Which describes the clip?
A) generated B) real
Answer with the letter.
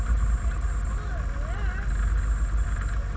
B